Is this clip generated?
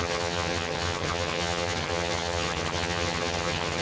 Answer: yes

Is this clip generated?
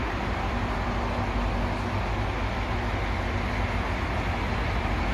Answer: no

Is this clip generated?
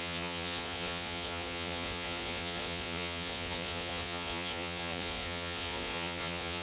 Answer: yes